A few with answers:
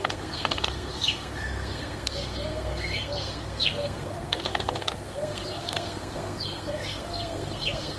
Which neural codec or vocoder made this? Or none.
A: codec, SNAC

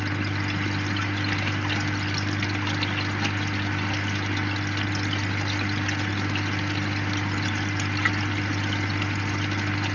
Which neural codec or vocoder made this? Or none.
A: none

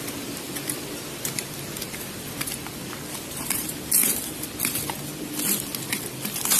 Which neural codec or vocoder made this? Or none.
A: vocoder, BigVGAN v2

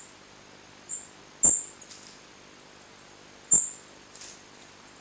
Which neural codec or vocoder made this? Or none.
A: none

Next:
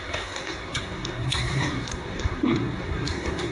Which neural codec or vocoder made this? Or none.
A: codec, SNAC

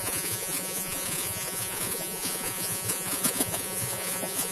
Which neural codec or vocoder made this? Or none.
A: vocoder, Vocos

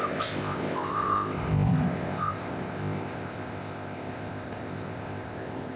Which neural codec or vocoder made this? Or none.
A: codec, ZipCodec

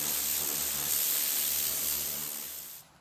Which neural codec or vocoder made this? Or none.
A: none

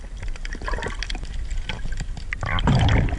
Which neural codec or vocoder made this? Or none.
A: none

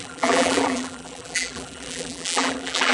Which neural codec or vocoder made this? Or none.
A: vocoder, BigVGAN v2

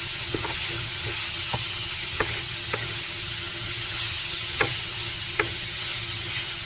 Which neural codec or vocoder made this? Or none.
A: vocoder, HiFi-GAN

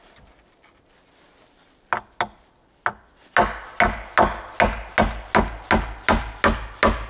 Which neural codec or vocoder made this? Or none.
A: none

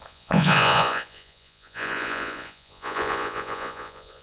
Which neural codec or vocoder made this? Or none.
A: vocoder, Vocos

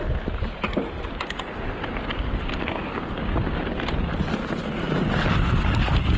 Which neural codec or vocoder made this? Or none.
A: none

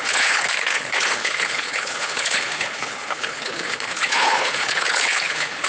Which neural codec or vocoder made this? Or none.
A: codec, HILCodec